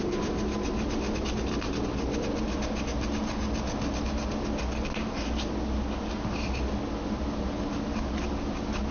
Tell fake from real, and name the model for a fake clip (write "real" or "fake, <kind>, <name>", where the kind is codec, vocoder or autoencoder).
real